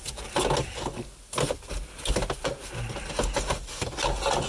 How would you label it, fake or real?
real